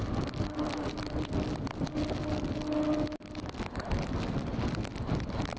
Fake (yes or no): no